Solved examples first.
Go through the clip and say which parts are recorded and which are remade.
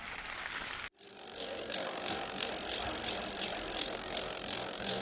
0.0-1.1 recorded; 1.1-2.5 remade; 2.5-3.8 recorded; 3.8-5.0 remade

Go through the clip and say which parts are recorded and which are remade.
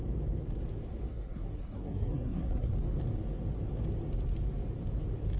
0.0-1.1 recorded; 1.1-2.7 remade; 2.7-5.4 recorded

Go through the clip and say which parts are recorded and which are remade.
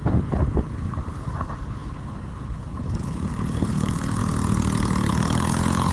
0.0-4.2 remade; 4.2-5.1 recorded; 5.1-5.9 remade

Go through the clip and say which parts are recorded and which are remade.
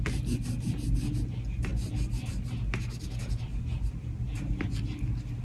0.0-5.4 recorded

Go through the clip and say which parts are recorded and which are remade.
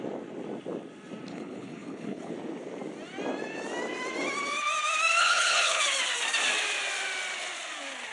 0.0-1.3 recorded; 1.3-2.3 remade; 2.3-5.2 recorded; 5.2-5.8 remade; 5.8-8.1 recorded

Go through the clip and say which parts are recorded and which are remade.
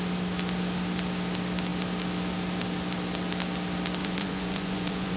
0.0-4.0 recorded; 4.0-5.2 remade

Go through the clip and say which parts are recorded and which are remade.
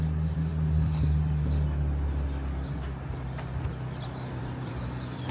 0.0-0.5 remade; 0.5-3.7 recorded; 3.7-5.3 remade